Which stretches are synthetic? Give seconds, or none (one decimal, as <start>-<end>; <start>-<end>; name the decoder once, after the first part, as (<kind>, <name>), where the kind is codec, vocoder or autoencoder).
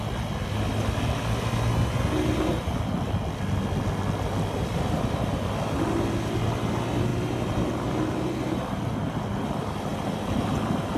none